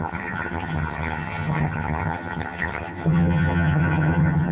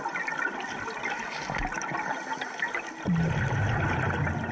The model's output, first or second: first